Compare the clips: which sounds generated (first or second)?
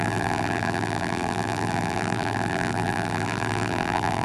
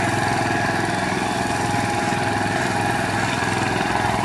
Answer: first